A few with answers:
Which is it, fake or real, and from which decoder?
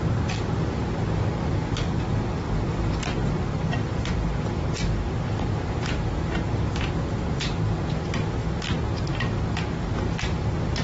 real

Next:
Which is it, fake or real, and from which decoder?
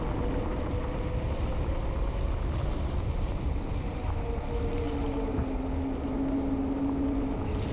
real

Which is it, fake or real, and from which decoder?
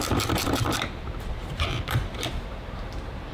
fake, vocoder, BigVGAN v2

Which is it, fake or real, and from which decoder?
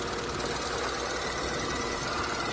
real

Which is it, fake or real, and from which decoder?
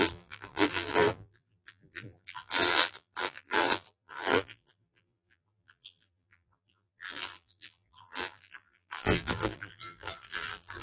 fake, vocoder, BigVGAN v2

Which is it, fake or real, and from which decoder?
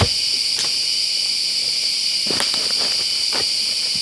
real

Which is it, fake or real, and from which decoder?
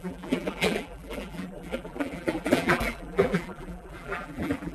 fake, vocoder, BigVGAN v2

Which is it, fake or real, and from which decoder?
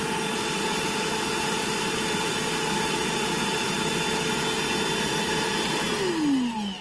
real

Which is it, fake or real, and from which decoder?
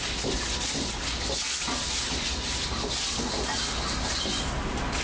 real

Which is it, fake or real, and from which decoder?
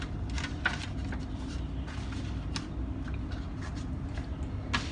real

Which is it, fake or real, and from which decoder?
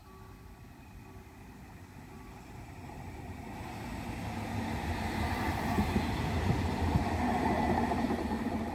real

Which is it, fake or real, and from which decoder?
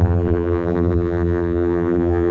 fake, vocoder, BigVGAN v2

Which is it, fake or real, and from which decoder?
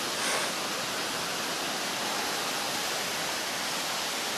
real